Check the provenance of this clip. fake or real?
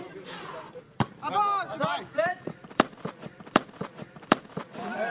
fake